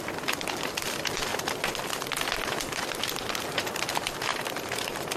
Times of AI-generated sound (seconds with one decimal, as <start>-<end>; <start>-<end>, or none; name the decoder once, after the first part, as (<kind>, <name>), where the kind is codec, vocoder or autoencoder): 0.0-1.3 (vocoder, BigVGAN v2); 2.6-5.2